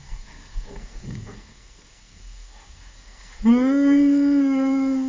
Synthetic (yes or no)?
yes